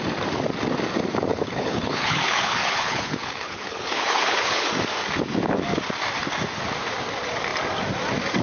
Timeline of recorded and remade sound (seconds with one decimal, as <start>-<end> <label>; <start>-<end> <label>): 0.0-1.3 recorded; 1.3-4.7 remade; 4.7-8.4 recorded